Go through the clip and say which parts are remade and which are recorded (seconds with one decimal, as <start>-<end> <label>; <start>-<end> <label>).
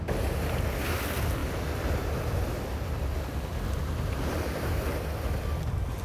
0.0-6.0 recorded